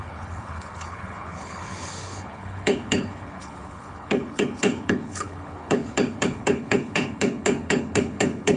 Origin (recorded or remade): remade